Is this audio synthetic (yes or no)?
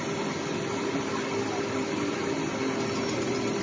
no